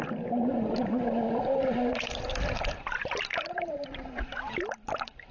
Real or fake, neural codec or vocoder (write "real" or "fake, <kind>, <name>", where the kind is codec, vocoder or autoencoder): fake, vocoder, BigVGAN v2